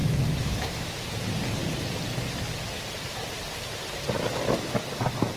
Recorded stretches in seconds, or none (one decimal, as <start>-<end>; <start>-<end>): 1.0-5.4